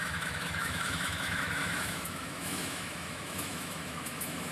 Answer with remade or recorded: remade